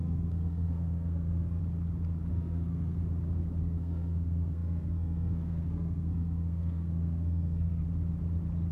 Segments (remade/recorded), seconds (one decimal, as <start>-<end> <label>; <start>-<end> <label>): 0.0-1.6 remade; 1.6-2.3 recorded; 2.3-3.0 remade; 3.0-3.6 recorded; 3.6-7.8 remade; 7.8-8.7 recorded